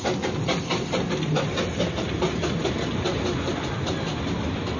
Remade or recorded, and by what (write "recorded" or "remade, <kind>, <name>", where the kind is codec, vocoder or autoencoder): recorded